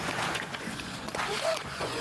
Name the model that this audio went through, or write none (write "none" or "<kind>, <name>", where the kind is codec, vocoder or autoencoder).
vocoder, Vocos